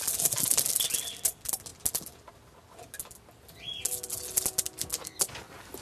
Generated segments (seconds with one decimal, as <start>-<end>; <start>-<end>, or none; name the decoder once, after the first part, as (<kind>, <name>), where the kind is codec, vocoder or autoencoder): none